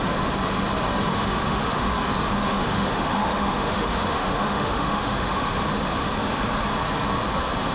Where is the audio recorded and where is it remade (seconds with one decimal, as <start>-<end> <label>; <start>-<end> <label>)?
0.0-1.1 recorded; 1.1-1.9 remade; 1.9-2.4 recorded; 2.4-5.6 remade; 5.6-7.7 recorded